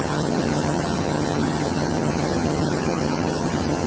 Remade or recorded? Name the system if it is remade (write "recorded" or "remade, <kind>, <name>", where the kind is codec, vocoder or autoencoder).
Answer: remade, vocoder, HiFi-GAN